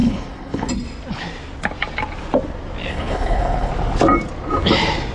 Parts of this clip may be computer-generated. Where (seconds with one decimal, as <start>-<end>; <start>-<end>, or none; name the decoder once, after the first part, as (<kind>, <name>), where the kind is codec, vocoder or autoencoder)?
0.0-0.7 (codec, HILCodec); 2.9-3.7

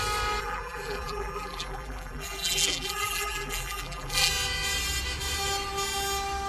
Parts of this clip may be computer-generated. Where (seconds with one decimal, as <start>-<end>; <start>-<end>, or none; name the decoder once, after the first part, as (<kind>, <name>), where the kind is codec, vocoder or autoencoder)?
0.4-4.3 (vocoder, BigVGAN v2)

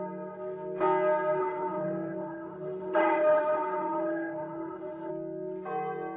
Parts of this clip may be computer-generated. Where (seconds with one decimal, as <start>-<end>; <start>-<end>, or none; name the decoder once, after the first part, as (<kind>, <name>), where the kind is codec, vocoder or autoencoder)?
1.4-5.1 (autoencoder, DAC-VAE)

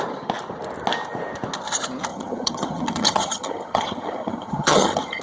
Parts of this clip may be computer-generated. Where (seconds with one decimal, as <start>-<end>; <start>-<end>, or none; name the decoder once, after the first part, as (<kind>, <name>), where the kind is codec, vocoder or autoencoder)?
2.1-5.2 (vocoder, HiFi-GAN)

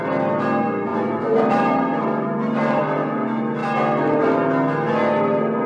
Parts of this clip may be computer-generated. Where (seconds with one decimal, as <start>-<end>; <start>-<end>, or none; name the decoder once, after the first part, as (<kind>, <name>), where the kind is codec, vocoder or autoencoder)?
0.9-2.8 (vocoder, BigVGAN v2)